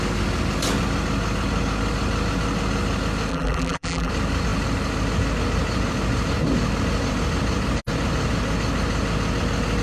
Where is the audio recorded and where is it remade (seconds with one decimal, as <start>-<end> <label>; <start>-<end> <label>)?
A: 0.0-3.3 recorded; 3.3-4.1 remade; 4.1-9.8 recorded